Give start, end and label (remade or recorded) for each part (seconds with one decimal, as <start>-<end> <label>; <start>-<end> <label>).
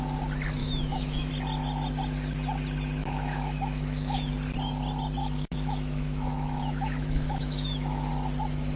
0.0-0.6 recorded; 0.6-1.3 remade; 1.3-3.0 recorded; 3.0-4.3 remade; 4.3-5.2 recorded; 5.2-8.1 remade; 8.1-8.8 recorded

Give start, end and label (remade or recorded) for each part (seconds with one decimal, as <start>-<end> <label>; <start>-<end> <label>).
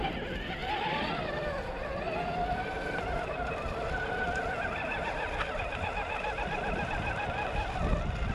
0.0-8.3 remade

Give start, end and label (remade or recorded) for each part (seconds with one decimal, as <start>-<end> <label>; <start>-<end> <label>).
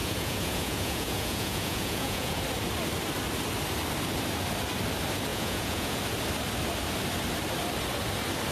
0.0-2.4 remade; 2.4-5.3 recorded; 5.3-6.0 remade; 6.0-8.5 recorded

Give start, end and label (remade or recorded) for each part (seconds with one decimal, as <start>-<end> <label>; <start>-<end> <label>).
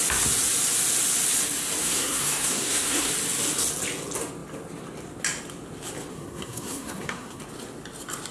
0.0-1.8 recorded; 1.8-3.1 remade; 3.1-6.1 recorded; 6.1-7.4 remade; 7.4-8.3 recorded